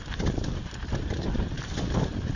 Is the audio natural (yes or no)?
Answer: yes